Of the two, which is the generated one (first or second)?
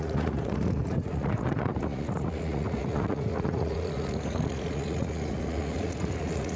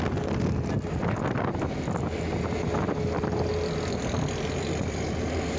first